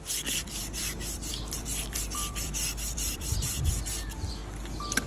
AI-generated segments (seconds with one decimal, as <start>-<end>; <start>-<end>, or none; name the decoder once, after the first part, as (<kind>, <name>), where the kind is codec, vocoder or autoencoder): 0.6-3.7 (vocoder, BigVGAN v2)